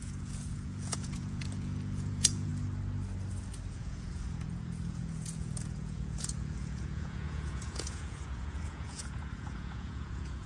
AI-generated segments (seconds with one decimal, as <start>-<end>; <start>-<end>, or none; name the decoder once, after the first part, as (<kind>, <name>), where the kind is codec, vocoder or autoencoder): 0.0-2.5 (vocoder, Vocos); 3.7-10.5